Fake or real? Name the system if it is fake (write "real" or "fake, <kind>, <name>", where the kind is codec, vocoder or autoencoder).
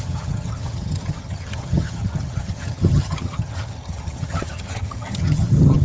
fake, vocoder, HiFi-GAN